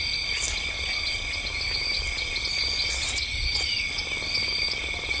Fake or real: real